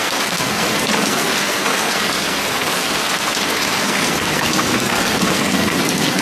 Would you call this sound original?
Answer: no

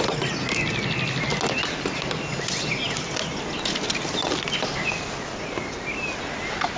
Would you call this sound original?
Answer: yes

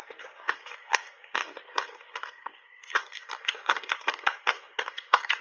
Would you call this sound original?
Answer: no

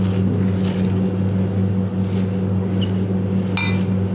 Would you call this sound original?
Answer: yes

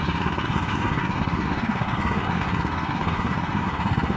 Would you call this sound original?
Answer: no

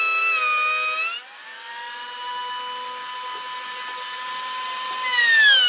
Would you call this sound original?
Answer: yes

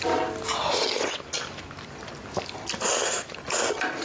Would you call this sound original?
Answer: yes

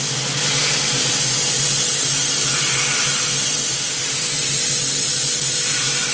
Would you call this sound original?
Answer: yes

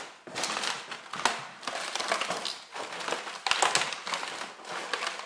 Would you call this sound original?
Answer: yes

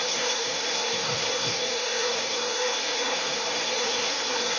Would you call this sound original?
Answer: no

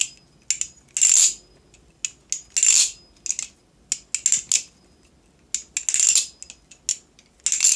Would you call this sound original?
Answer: yes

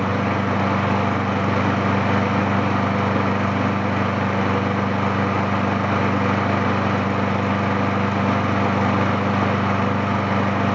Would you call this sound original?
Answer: yes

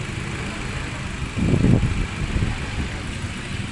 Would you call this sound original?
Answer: yes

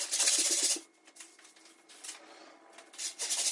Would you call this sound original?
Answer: yes